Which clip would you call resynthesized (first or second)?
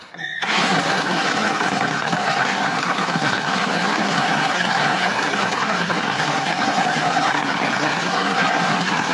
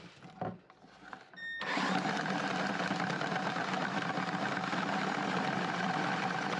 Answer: first